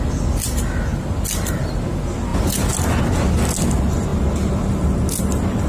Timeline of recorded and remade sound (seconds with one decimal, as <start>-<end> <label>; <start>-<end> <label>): 0.0-5.7 recorded